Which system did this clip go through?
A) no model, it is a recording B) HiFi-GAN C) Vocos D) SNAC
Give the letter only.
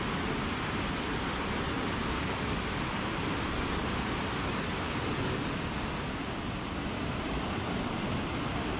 A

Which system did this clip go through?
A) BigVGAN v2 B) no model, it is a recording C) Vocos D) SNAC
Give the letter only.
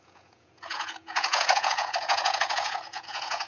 C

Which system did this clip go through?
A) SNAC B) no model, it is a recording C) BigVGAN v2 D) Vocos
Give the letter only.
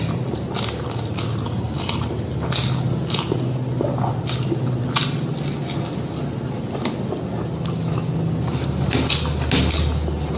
B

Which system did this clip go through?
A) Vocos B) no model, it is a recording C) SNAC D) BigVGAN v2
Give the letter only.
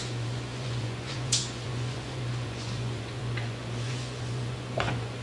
A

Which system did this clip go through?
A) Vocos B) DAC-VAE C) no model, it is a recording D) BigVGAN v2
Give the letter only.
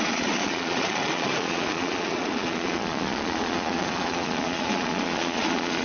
A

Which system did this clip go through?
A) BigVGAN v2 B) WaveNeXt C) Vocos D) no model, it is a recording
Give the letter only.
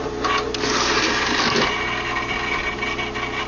D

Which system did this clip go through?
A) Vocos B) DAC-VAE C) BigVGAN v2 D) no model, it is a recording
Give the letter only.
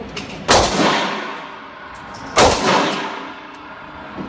D